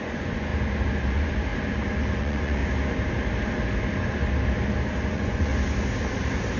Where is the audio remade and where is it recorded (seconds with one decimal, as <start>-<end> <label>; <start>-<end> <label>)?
0.0-0.5 remade; 0.5-1.1 recorded; 1.1-1.5 remade; 1.5-2.2 recorded; 2.2-2.6 remade; 2.6-5.1 recorded; 5.1-5.5 remade; 5.5-6.6 recorded

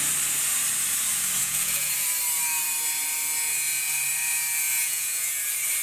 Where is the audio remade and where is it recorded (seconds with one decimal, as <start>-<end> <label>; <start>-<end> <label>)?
0.0-1.4 recorded; 1.4-1.9 remade; 1.9-4.7 recorded; 4.7-5.3 remade; 5.3-5.8 recorded

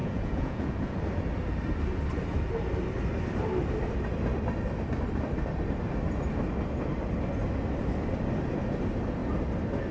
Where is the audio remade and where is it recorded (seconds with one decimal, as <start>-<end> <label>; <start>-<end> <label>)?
0.0-1.0 remade; 1.0-9.9 recorded

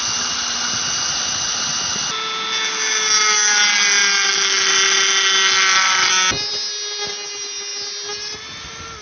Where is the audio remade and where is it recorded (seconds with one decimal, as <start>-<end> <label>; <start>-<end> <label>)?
0.0-9.0 recorded

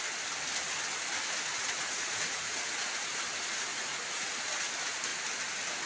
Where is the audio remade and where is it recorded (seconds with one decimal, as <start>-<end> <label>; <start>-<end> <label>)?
0.0-1.6 recorded; 1.6-3.1 remade; 3.1-3.7 recorded; 3.7-4.3 remade; 4.3-5.9 recorded

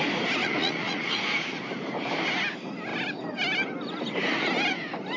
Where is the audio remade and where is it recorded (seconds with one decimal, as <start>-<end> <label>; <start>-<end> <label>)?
0.0-0.4 recorded; 0.4-1.6 remade; 1.6-5.2 recorded